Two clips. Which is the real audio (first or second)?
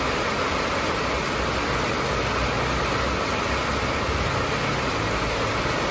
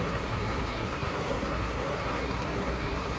first